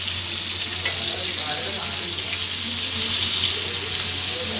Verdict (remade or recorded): recorded